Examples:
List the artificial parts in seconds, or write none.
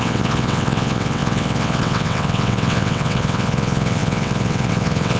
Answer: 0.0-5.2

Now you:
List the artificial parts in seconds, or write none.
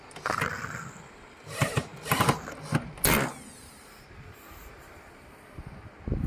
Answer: none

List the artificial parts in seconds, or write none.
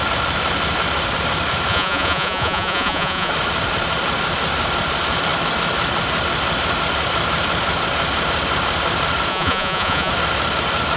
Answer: 1.7-3.3; 9.3-10.1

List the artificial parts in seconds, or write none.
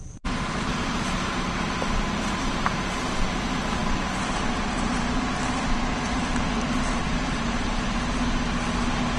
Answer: 0.0-9.2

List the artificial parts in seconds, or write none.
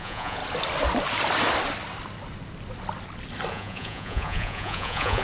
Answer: 0.0-0.4; 3.5-5.2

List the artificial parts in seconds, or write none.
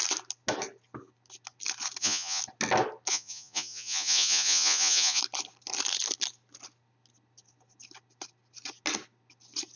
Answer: 2.0-2.4; 3.1-5.2